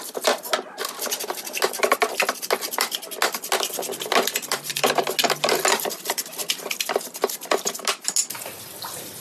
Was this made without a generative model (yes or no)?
yes